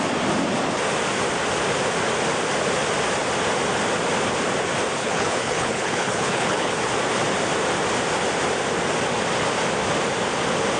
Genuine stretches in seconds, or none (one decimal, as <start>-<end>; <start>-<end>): 0.0-5.0; 6.8-10.8